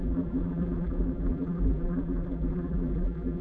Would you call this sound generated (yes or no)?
yes